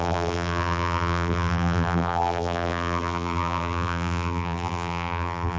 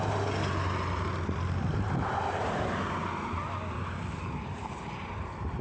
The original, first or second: second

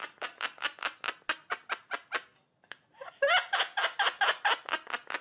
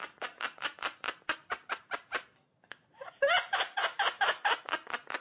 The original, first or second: first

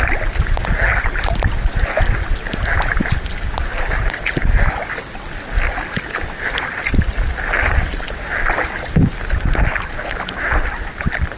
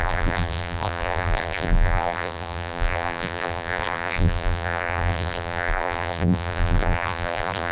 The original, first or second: first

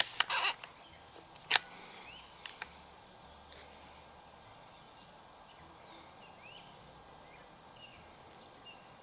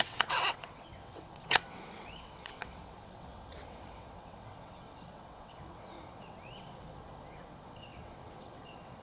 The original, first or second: first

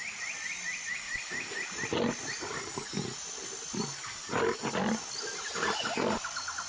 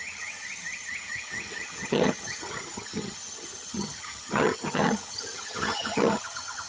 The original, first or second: first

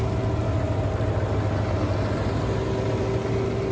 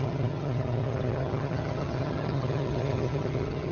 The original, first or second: first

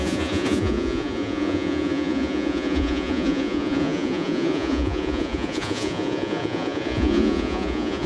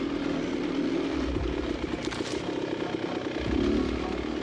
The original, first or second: second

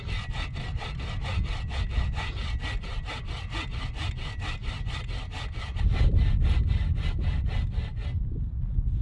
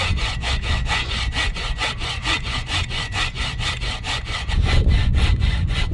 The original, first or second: first